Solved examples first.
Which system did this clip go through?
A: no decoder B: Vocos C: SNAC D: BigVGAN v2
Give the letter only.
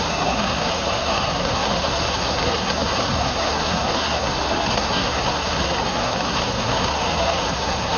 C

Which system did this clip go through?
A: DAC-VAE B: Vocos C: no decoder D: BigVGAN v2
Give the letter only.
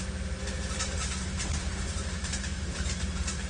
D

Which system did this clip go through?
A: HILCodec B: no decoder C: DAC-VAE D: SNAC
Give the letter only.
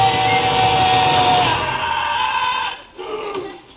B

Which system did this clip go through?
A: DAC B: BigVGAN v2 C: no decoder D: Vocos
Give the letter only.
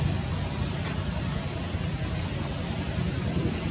C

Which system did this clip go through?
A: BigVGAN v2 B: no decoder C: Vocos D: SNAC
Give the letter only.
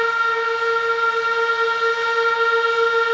B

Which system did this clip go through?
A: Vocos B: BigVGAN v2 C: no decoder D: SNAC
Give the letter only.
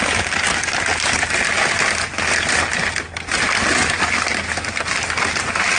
C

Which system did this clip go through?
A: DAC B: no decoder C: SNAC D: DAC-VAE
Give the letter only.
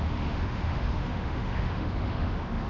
D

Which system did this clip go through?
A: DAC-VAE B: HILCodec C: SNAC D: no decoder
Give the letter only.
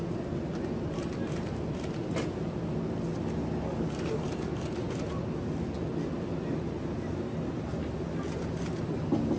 D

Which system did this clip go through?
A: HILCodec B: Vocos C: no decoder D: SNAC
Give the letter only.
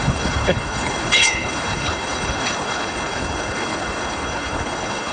A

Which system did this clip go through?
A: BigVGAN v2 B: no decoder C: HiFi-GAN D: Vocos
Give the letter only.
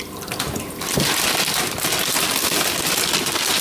B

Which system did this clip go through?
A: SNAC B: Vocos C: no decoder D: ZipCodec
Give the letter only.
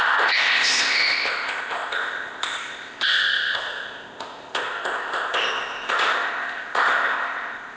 D